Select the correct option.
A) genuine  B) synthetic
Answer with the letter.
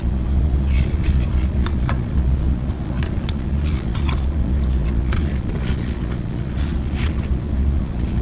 B